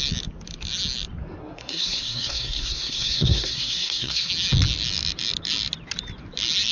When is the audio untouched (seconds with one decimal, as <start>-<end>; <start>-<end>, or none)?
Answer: 0.0-1.4; 4.3-6.7